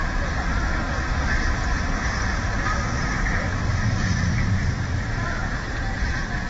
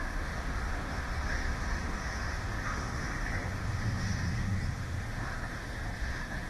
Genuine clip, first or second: first